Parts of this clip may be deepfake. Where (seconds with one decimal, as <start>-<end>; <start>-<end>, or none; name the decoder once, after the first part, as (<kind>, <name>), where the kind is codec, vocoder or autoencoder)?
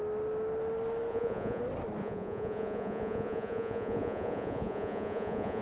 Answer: 1.1-1.6 (vocoder, Vocos); 2.0-5.6